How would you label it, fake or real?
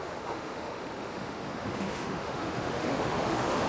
fake